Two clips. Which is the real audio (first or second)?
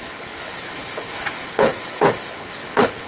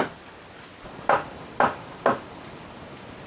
second